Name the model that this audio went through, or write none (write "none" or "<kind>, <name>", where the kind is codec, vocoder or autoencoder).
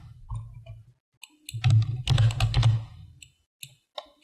none